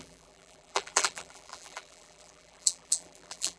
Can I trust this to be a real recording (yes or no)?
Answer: no